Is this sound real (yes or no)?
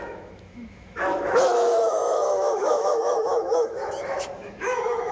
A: no